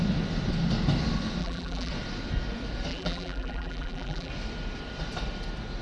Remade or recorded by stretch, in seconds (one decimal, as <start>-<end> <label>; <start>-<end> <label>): 0.0-1.4 recorded; 1.4-1.9 remade; 1.9-2.9 recorded; 2.9-4.3 remade; 4.3-5.8 recorded

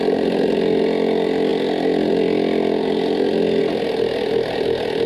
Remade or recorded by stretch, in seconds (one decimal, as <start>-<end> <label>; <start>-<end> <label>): 0.0-5.1 recorded

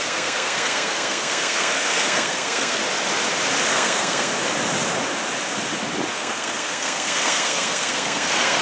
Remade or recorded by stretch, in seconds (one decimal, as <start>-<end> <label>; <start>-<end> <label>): 0.0-2.8 remade; 2.8-3.7 recorded; 3.7-4.3 remade; 4.3-6.1 recorded; 6.1-8.6 remade